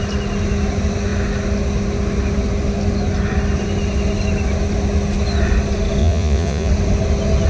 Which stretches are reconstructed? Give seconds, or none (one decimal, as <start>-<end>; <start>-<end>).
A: 6.0-6.7